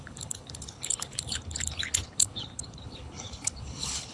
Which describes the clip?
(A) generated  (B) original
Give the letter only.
A